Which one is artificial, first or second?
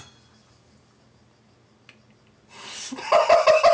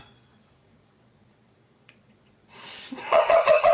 second